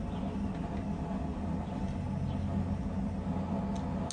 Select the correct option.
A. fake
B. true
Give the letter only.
B